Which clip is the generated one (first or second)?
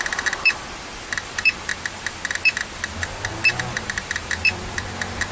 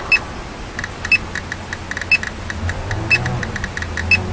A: first